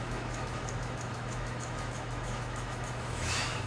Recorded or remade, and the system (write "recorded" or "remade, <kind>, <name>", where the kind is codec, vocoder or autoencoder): remade, autoencoder, DAC-VAE